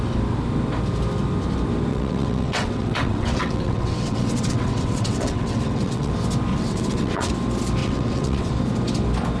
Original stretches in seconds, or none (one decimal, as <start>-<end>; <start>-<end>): 0.0-1.9; 6.1-6.5; 7.3-7.8; 8.5-9.4